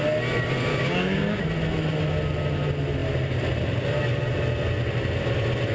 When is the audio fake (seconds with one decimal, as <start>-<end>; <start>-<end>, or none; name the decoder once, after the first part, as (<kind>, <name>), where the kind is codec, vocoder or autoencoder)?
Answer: 0.7-1.4 (codec, DAC)